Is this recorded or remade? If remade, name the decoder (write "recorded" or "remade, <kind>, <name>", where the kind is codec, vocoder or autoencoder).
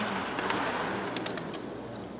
recorded